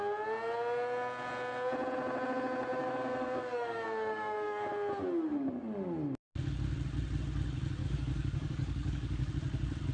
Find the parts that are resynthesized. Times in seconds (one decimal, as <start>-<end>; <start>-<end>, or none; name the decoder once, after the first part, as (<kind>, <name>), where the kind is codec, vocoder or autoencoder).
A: 2.8-4.7 (codec, DAC); 7.8-9.3